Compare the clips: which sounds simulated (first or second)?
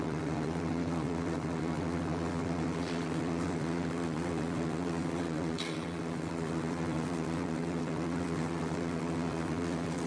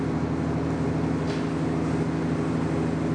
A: first